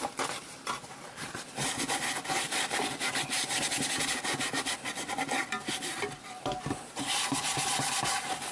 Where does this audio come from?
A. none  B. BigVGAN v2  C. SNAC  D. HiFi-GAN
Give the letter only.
A